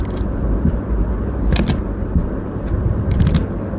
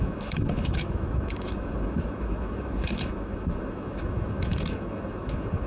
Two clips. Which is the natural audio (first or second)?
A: first